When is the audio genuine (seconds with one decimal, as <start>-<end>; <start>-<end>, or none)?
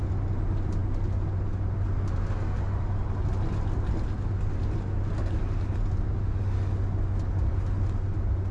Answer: 0.0-8.5